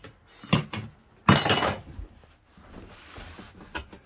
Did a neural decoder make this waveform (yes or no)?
no